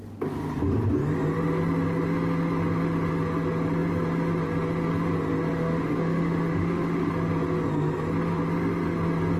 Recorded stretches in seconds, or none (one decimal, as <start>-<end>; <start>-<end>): 0.0-5.5; 7.1-9.4